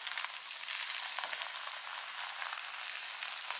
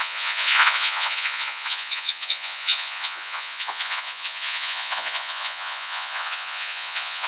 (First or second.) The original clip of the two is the first